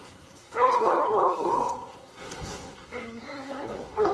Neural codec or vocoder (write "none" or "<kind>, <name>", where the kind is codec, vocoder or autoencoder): codec, SNAC